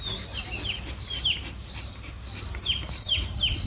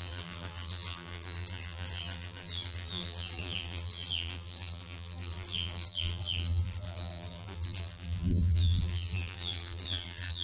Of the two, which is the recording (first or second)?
first